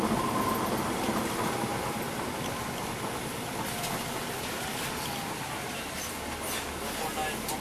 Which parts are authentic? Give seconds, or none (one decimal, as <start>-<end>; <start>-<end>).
0.0-7.6